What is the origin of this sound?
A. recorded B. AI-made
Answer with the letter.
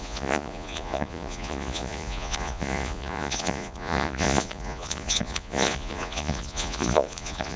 B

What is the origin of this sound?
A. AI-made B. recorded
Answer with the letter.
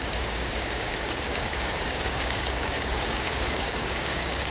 A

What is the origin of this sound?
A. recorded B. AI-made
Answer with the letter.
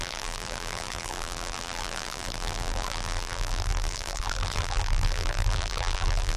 B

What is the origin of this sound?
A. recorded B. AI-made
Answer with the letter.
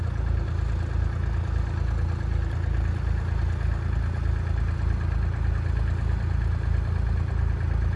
A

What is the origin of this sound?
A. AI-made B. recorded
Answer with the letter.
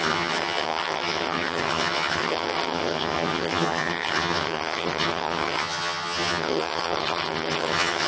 A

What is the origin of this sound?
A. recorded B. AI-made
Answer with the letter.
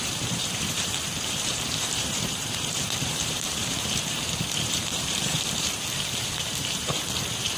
B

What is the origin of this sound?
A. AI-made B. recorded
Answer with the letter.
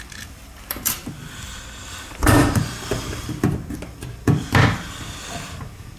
A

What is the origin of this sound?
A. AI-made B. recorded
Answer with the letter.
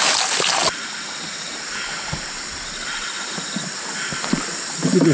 B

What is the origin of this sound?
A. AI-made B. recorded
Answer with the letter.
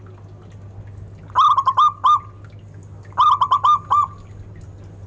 B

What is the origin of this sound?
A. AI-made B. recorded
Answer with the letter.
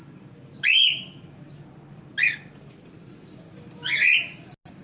B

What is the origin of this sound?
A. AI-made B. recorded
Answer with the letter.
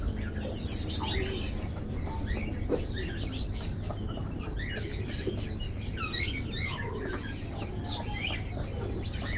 B